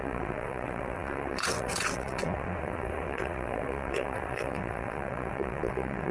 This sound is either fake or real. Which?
fake